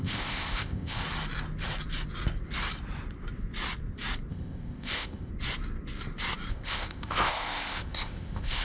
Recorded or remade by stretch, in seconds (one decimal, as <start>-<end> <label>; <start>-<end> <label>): 0.0-1.0 remade; 1.0-4.3 recorded; 4.3-5.3 remade; 5.3-6.5 recorded; 6.5-8.6 remade